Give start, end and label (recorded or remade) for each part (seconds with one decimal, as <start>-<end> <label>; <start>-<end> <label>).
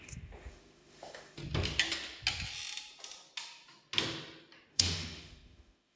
0.0-1.4 remade; 1.4-4.7 recorded; 4.7-6.0 remade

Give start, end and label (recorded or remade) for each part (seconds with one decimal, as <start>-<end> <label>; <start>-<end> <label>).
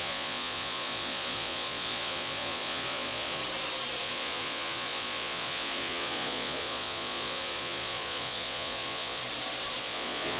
0.0-3.4 remade; 3.4-4.0 recorded; 4.0-9.2 remade; 9.2-9.8 recorded; 9.8-10.4 remade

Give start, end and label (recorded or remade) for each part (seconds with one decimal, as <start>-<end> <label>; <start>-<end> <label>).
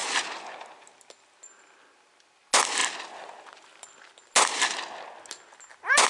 0.0-6.1 recorded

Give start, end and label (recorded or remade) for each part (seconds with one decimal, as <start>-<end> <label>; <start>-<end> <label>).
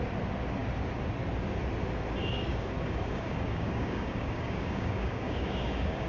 0.0-2.2 recorded; 2.2-6.1 remade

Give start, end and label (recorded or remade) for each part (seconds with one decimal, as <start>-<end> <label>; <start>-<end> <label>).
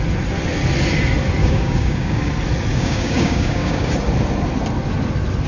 0.0-1.4 recorded; 1.4-2.3 remade; 2.3-2.7 recorded; 2.7-3.9 remade; 3.9-5.5 recorded